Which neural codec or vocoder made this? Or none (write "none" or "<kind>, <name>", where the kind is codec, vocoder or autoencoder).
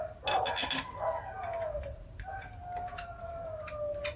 none